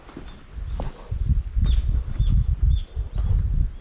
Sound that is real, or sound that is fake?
real